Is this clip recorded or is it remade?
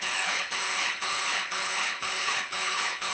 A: remade